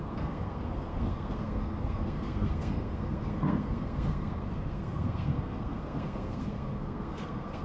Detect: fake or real fake